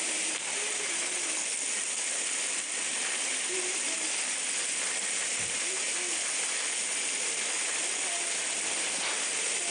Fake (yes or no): no